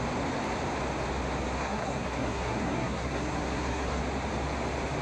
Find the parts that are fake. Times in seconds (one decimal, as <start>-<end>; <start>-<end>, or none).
1.6-4.0